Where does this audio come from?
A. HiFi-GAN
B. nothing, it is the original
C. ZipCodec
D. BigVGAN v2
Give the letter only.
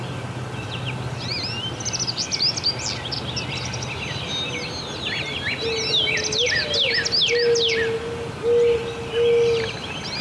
B